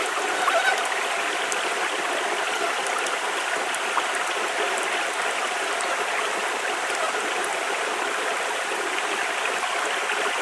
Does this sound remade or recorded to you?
recorded